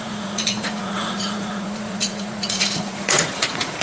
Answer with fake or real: fake